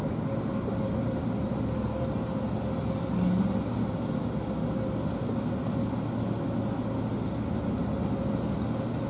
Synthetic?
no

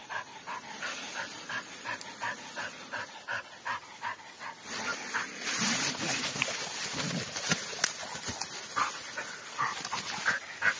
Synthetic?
no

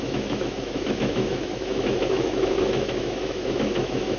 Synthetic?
yes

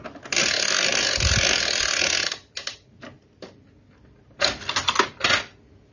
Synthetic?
no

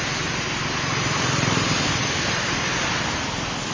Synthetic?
yes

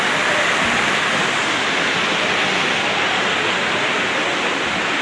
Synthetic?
no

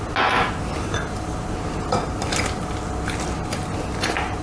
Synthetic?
no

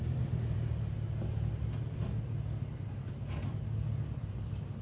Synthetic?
no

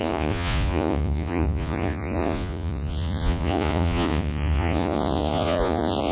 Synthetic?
yes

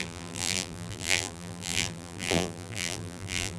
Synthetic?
yes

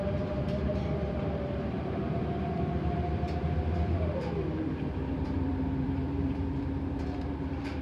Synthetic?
yes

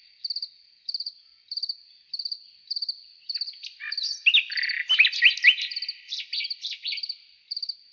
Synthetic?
no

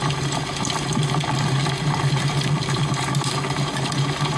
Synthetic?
no